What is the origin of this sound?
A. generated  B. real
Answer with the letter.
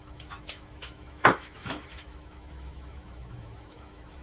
A